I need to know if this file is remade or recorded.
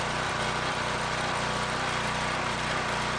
remade